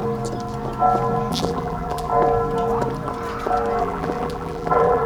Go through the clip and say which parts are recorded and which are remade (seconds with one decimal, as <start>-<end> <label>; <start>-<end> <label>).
0.0-1.3 recorded; 1.3-2.1 remade; 2.1-3.8 recorded; 3.8-5.1 remade